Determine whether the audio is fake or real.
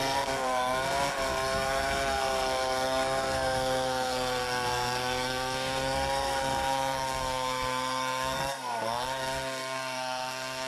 fake